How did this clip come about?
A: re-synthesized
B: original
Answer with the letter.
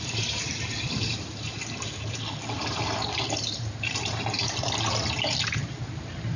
A